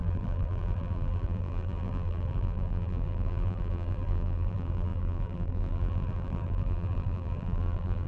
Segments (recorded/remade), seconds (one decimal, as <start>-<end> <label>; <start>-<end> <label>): 0.0-8.1 remade